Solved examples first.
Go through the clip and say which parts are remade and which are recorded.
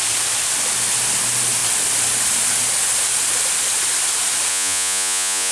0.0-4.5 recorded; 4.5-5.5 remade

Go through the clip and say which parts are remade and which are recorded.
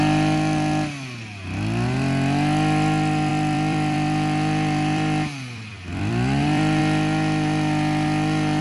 0.0-3.3 recorded; 3.3-6.8 remade; 6.8-8.6 recorded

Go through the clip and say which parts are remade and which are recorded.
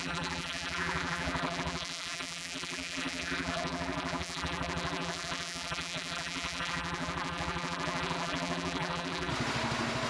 0.0-9.3 remade; 9.3-10.1 recorded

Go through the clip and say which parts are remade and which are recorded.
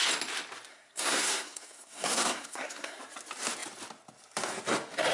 0.0-0.7 recorded; 0.7-3.0 remade; 3.0-5.1 recorded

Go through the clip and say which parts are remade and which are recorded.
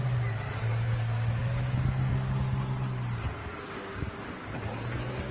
0.0-3.4 recorded; 3.4-4.1 remade; 4.1-5.3 recorded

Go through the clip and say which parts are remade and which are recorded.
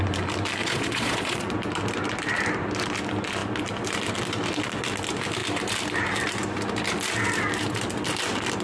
0.0-0.6 recorded; 0.6-1.5 remade; 1.5-8.6 recorded